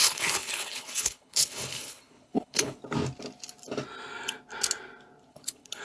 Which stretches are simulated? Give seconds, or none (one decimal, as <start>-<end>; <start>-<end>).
0.0-2.8; 5.3-5.8